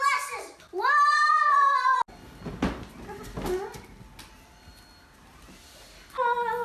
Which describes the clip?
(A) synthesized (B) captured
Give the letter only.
B